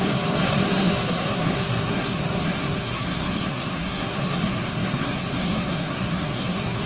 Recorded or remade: remade